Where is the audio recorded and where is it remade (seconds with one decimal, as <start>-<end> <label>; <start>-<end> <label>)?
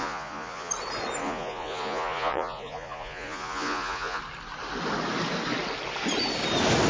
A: 0.0-0.7 remade; 0.7-1.2 recorded; 1.2-4.2 remade; 4.2-6.9 recorded